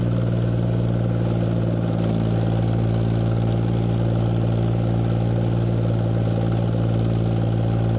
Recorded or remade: recorded